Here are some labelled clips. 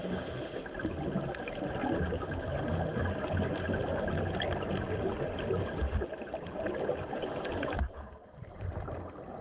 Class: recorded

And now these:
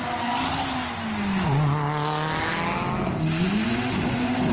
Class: recorded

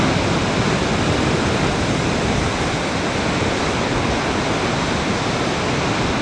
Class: recorded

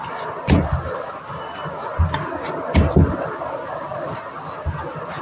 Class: recorded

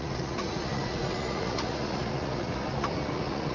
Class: remade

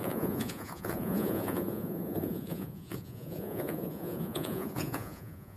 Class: remade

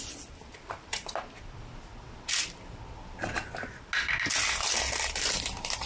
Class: recorded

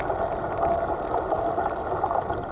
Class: recorded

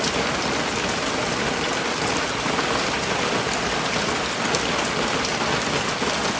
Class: recorded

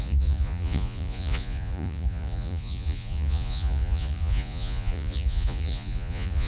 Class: remade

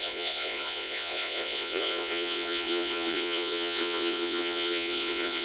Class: remade